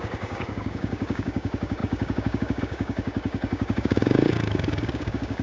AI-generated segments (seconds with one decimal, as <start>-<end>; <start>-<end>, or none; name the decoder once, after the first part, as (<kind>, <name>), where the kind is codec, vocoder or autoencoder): 0.0-5.4 (codec, DAC)